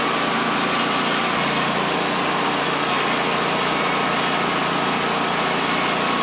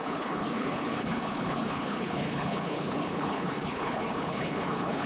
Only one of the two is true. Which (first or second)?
first